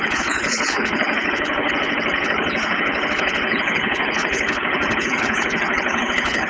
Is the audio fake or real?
fake